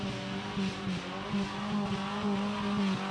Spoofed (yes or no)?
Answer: no